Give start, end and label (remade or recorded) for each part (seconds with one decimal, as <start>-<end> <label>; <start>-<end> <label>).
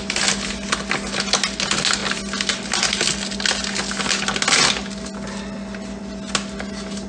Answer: 0.0-7.1 recorded